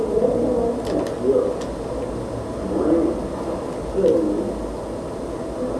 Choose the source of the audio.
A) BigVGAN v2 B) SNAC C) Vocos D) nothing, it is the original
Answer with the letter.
D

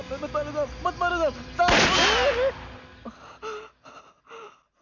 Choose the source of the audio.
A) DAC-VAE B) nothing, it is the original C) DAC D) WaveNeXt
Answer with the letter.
B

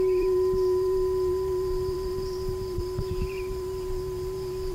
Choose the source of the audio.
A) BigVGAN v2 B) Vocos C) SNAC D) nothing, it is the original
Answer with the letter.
A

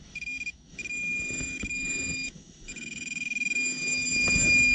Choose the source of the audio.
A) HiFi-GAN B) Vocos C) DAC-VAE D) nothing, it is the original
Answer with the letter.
C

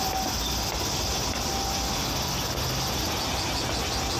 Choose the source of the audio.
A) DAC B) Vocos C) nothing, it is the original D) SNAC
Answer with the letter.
C